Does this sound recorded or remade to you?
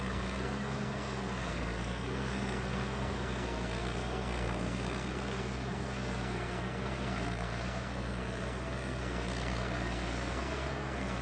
remade